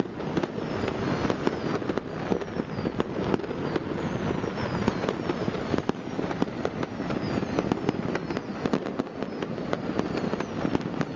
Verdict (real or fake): real